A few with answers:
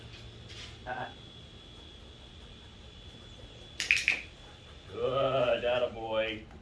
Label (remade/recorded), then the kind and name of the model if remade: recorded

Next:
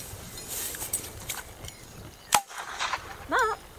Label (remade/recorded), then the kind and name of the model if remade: remade, vocoder, BigVGAN v2